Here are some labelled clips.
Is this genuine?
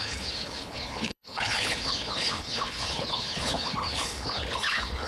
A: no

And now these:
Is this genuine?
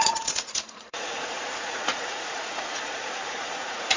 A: no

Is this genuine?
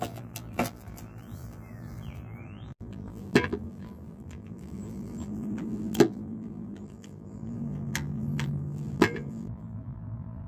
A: no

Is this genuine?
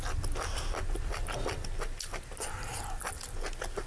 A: yes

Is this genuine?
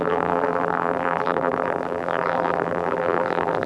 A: no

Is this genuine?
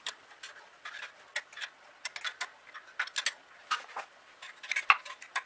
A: yes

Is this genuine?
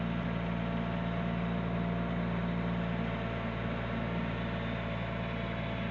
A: yes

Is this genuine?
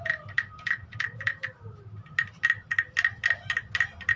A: no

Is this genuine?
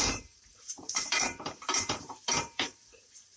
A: no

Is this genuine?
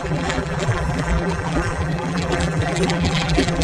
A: no